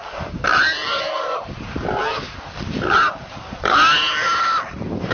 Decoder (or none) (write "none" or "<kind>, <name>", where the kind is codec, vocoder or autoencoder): none